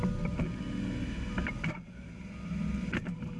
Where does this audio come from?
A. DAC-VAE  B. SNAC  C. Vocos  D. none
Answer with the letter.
D